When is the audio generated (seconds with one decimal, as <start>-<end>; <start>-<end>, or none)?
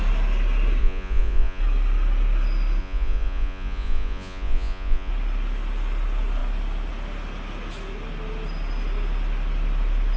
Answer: 0.8-1.6; 2.8-5.1